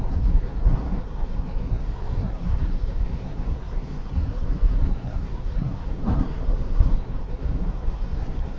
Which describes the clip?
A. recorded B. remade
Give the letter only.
B